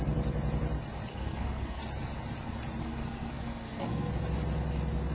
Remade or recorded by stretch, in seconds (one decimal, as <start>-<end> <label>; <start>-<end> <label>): 0.0-1.1 recorded; 1.1-1.8 remade; 1.8-2.8 recorded; 2.8-4.1 remade; 4.1-5.1 recorded